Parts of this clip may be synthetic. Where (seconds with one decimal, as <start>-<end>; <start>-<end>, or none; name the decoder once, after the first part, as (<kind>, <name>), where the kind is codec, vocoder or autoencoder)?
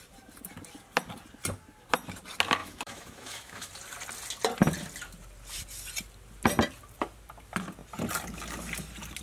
2.6-3.7 (autoencoder, DAC-VAE)